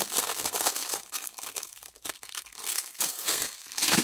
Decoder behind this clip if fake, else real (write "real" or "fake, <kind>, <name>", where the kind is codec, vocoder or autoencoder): fake, codec, SNAC